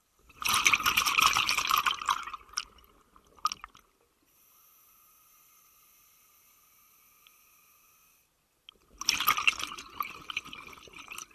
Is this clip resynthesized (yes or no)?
no